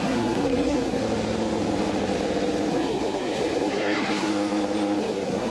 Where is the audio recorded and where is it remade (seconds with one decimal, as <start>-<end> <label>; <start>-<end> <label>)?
0.0-1.0 remade; 1.0-2.7 recorded; 2.7-4.3 remade; 4.3-5.0 recorded; 5.0-5.5 remade